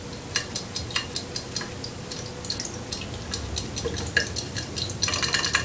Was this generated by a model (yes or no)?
no